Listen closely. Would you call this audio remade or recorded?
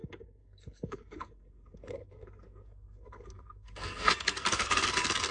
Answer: remade